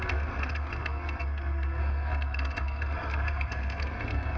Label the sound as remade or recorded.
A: remade